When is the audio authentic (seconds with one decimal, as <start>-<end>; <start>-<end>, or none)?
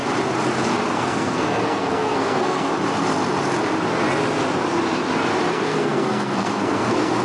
0.0-0.9; 2.7-5.5